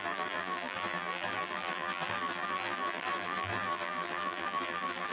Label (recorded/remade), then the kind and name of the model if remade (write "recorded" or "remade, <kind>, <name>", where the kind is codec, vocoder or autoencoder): remade, vocoder, BigVGAN v2